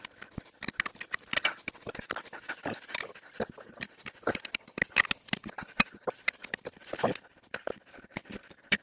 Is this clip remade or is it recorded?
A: recorded